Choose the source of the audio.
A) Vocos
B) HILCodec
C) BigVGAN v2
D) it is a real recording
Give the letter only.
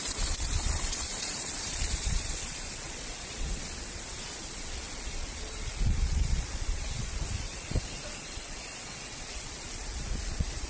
A